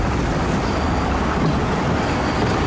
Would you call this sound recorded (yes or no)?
yes